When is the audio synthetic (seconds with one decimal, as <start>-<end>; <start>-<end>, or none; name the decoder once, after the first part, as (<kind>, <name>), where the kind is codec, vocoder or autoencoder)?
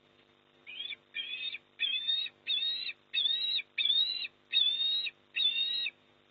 1.9-2.5 (autoencoder, DAC-VAE)